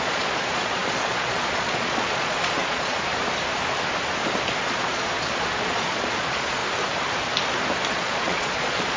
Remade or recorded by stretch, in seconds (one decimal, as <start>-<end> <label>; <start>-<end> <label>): 0.0-3.1 remade; 3.1-4.6 recorded; 4.6-6.6 remade; 6.6-7.9 recorded; 7.9-9.0 remade